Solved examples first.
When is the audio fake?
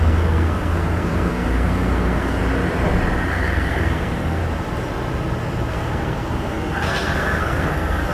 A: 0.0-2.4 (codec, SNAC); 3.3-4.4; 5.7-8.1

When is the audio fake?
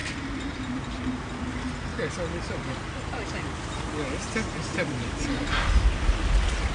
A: 0.0-0.8 (vocoder, BigVGAN v2); 4.6-5.7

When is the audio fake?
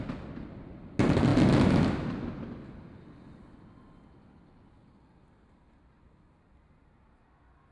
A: none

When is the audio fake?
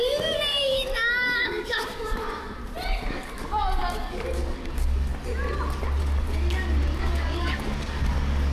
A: 0.0-2.6 (codec, DAC); 3.1-5.1; 6.0-8.5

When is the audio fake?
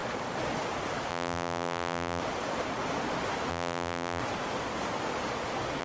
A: 1.1-2.2 (vocoder, BigVGAN v2); 3.5-4.2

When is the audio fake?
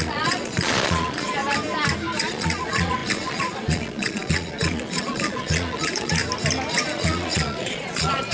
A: 0.0-1.4 (vocoder, Vocos); 2.2-6.2; 6.7-8.3